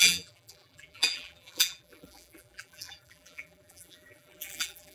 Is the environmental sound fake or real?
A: fake